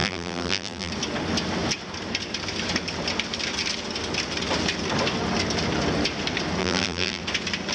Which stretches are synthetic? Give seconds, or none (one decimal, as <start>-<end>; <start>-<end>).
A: 0.0-0.9; 6.6-7.2